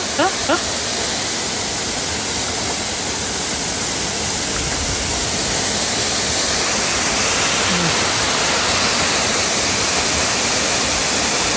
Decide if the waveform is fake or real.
real